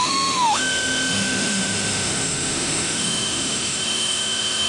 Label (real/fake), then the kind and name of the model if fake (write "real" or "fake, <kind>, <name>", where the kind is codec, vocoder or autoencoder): fake, autoencoder, DAC-VAE